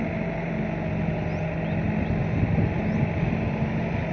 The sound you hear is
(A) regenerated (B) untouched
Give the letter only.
B